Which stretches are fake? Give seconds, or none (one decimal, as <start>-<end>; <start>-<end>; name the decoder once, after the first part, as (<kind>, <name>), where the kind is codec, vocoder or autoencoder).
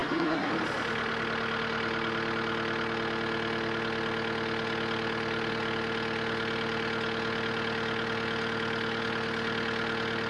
0.0-0.5 (codec, SNAC)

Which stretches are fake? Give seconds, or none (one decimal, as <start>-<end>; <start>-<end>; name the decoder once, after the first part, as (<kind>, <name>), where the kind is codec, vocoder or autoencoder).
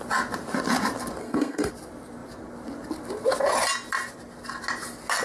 1.2-1.7 (codec, SNAC)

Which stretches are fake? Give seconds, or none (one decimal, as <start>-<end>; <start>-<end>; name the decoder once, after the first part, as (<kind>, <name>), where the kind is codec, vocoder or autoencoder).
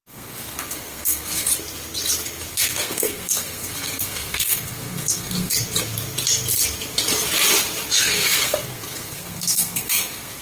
0.0-1.5 (codec, SNAC); 2.5-5.5; 8.0-10.4